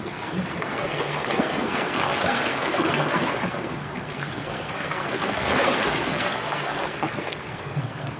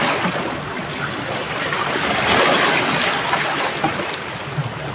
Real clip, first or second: second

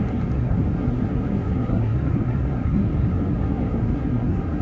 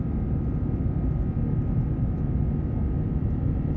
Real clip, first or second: second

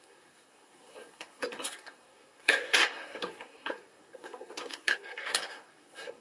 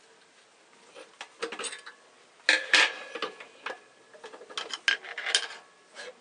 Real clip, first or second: second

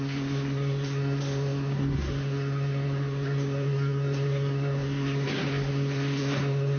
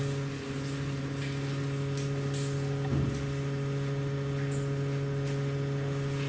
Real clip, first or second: second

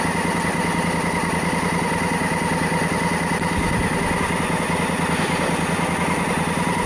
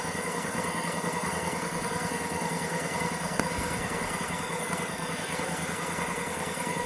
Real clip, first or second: first